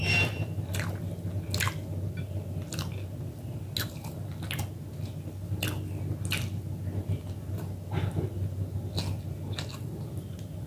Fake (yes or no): no